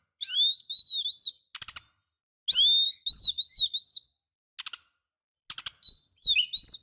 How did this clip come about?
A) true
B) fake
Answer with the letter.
A